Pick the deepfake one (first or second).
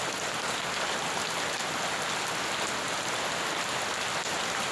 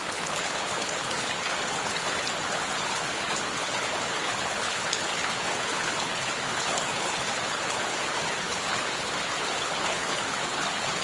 second